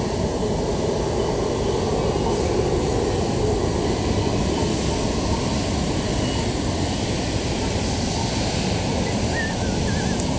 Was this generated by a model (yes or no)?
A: no